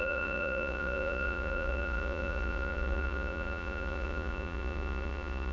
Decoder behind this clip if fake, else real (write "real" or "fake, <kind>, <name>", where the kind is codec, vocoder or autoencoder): fake, vocoder, Vocos